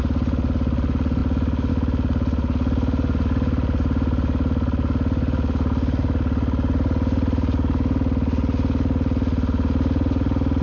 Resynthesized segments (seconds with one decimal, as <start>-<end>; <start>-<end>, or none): none